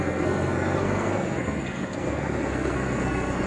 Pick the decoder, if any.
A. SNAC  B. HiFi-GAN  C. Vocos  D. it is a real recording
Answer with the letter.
A